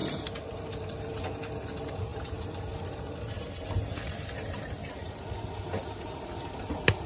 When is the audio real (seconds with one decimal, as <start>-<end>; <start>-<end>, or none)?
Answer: 1.0-2.1; 2.6-7.1